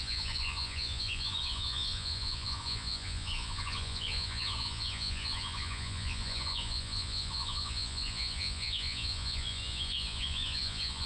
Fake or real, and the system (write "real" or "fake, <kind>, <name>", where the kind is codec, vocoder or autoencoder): fake, vocoder, Vocos